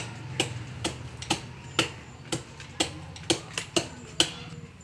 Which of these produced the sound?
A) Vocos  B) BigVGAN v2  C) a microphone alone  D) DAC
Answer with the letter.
C